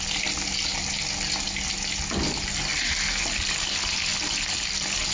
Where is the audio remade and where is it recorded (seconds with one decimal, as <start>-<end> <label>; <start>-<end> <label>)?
0.0-5.1 recorded